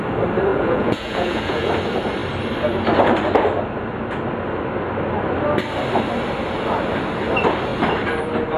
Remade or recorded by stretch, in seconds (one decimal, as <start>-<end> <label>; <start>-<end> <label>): 0.0-0.5 recorded; 0.5-1.7 remade; 1.7-8.6 recorded